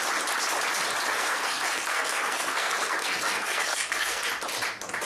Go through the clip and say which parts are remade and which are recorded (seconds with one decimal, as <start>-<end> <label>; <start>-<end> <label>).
0.0-1.1 recorded; 1.1-4.2 remade; 4.2-5.1 recorded

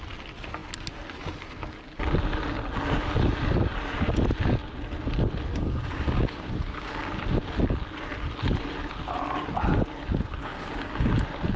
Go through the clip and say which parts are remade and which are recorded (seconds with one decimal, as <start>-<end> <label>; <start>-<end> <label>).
0.0-5.5 recorded; 5.5-7.1 remade; 7.1-10.4 recorded; 10.4-11.1 remade; 11.1-11.6 recorded